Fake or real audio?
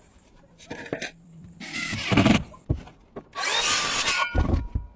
fake